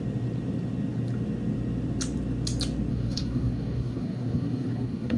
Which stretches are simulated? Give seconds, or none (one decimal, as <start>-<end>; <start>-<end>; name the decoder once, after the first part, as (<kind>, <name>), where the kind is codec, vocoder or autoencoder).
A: 2.9-5.2 (codec, SNAC)